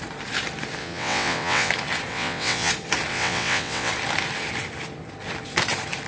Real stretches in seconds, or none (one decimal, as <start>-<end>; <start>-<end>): 0.0-0.8; 1.7-2.1; 2.7-3.1; 3.9-6.1